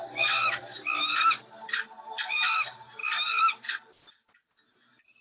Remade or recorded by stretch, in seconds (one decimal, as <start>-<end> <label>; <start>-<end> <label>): 0.0-5.2 recorded